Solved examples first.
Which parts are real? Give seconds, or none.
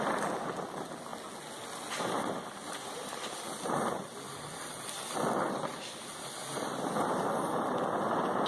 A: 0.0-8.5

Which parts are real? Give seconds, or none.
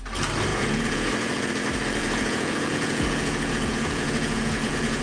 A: 0.0-0.5; 1.5-2.0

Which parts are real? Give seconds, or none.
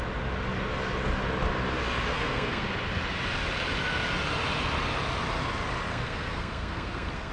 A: 0.0-2.1; 2.6-5.9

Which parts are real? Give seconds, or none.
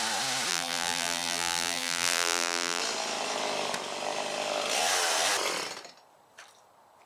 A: 0.0-0.5; 2.8-7.1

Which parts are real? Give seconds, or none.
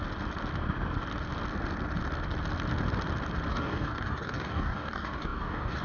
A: 0.0-3.5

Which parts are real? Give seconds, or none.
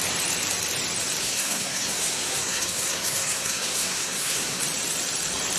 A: 0.0-1.2; 4.6-5.6